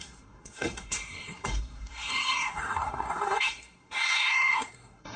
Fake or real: fake